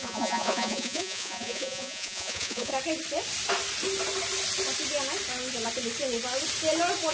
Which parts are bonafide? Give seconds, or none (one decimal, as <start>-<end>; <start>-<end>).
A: 2.7-7.1